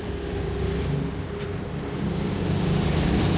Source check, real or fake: fake